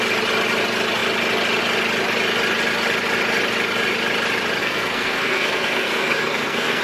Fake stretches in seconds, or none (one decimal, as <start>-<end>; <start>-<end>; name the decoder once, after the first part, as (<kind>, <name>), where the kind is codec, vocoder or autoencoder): 4.6-6.8 (codec, SNAC)